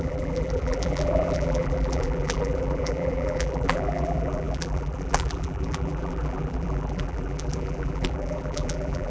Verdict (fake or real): fake